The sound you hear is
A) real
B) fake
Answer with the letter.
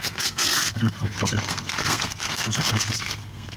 B